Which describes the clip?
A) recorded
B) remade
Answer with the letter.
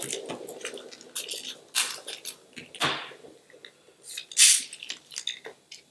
A